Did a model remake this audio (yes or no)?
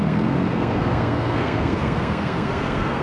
yes